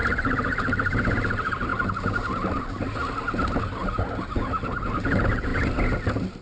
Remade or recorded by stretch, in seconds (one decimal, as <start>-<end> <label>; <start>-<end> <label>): 0.0-6.4 recorded